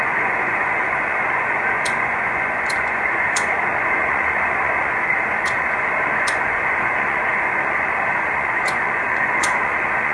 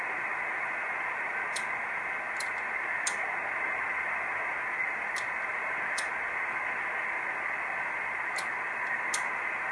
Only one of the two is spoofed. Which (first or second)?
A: first